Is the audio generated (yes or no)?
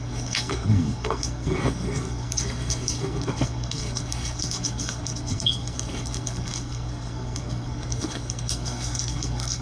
yes